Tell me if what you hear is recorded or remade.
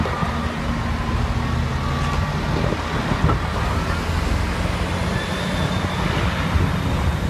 recorded